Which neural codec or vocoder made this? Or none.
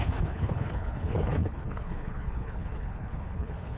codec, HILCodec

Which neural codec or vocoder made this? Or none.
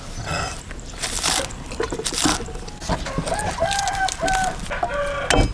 none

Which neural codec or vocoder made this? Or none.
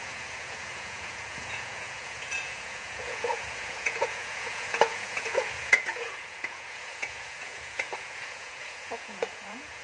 vocoder, Vocos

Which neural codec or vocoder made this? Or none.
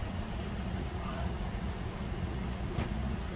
vocoder, Vocos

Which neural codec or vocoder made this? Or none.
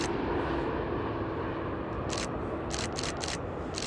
none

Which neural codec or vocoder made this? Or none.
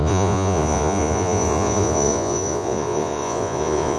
vocoder, Vocos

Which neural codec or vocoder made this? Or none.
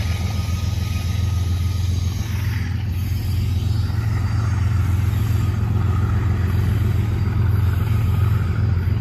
none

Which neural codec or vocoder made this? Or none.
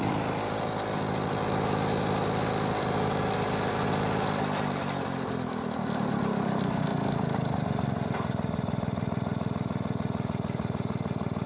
none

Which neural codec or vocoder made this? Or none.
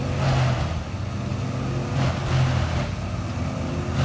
none